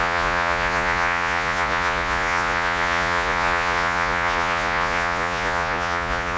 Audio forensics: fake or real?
fake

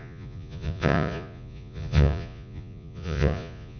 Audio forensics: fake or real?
fake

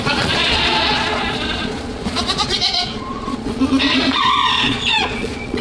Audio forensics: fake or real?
fake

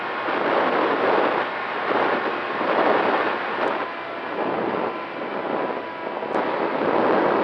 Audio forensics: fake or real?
real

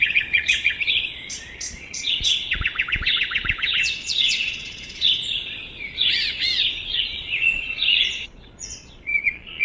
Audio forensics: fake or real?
fake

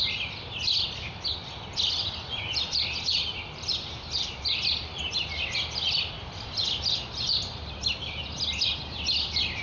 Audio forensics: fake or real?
real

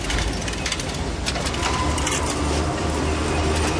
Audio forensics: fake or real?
real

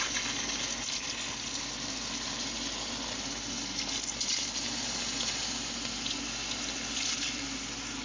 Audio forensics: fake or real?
real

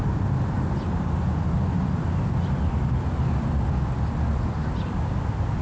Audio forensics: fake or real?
real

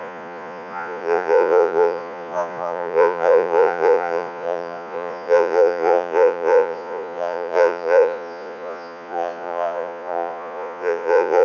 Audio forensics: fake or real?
fake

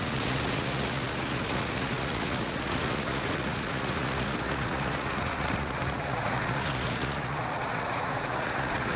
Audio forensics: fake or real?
fake